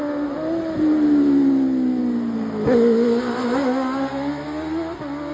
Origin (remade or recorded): recorded